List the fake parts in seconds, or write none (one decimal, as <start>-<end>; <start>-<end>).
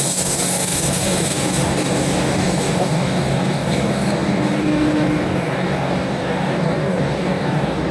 0.0-7.9